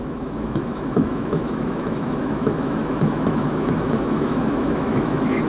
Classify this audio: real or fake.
fake